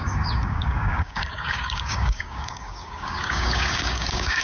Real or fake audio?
fake